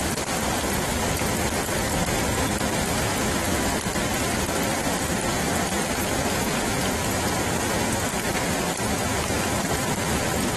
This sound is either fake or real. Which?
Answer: real